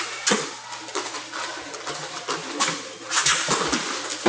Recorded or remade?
recorded